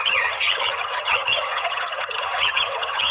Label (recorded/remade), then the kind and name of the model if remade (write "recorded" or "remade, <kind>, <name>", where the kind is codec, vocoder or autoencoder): remade, vocoder, HiFi-GAN